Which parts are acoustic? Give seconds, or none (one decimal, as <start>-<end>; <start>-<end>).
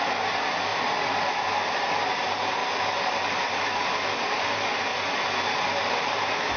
0.7-1.3; 2.6-3.2; 4.9-5.8